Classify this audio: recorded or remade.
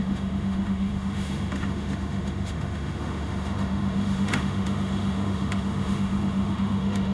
remade